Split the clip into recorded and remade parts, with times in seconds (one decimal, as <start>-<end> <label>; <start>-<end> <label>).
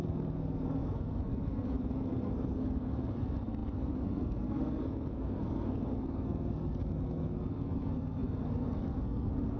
0.0-9.6 remade